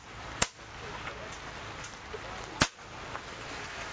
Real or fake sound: real